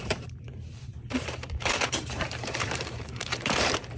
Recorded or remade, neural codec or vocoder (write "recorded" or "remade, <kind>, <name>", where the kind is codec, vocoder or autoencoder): remade, vocoder, BigVGAN v2